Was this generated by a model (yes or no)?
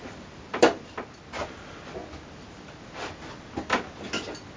no